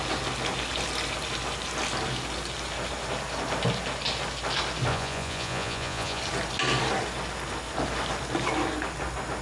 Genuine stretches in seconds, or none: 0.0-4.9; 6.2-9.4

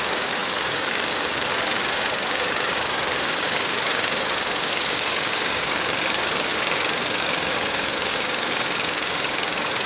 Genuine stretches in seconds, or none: none